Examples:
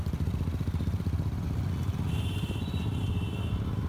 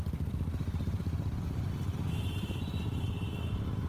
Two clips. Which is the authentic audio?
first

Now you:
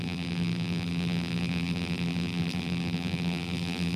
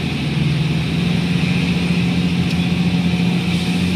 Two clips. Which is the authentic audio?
second